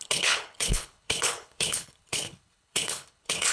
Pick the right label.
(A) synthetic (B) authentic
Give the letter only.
A